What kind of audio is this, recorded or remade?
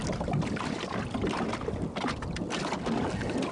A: recorded